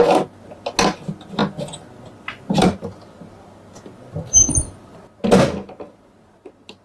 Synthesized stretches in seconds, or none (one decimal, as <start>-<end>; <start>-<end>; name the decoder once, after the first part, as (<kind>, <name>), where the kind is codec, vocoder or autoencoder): none